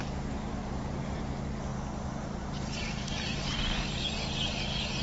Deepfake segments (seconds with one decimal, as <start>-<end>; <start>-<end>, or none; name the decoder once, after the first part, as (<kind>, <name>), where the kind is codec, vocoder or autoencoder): 0.6-1.2 (vocoder, BigVGAN v2); 1.7-4.0